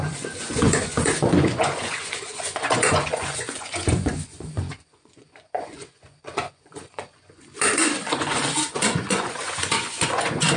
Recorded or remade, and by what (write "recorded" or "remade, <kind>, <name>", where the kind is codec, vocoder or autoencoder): remade, vocoder, Vocos